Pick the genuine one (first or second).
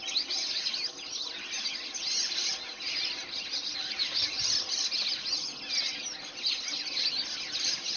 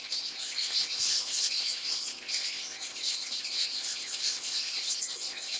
first